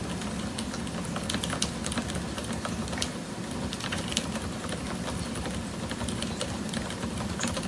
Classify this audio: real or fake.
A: real